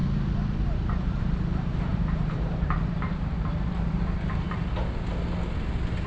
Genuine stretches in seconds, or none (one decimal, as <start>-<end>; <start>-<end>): 1.3-1.9; 4.7-6.1